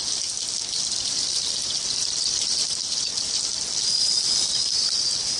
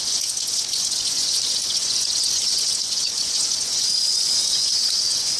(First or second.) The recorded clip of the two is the first